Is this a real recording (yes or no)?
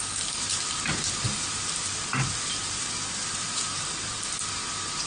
no